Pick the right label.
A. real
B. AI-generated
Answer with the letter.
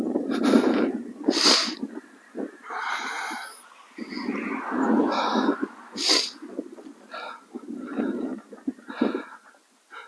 A